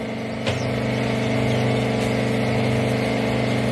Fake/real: real